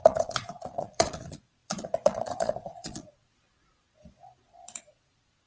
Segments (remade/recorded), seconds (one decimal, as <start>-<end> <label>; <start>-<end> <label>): 0.0-5.5 remade